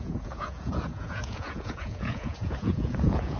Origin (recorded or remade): remade